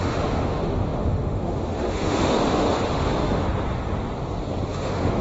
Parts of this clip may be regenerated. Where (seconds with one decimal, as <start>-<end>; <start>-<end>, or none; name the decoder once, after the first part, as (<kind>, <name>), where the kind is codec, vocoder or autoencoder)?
0.0-3.4 (autoencoder, DAC-VAE); 4.7-5.2